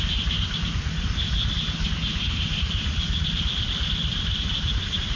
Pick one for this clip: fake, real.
real